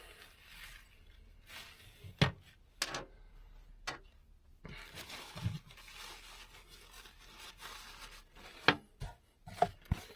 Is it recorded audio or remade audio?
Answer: recorded